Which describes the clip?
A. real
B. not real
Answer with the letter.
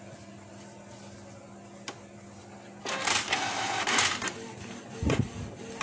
A